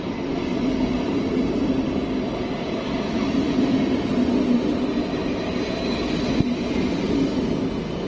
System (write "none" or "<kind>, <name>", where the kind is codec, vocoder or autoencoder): none